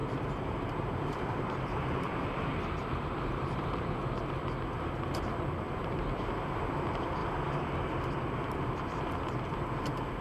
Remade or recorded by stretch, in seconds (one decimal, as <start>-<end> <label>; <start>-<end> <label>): 0.0-4.0 remade; 4.0-5.1 recorded; 5.1-7.2 remade; 7.2-10.2 recorded